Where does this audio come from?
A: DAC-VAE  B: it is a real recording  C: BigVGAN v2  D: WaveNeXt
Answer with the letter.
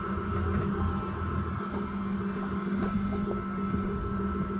B